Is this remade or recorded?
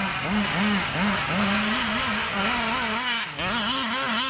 recorded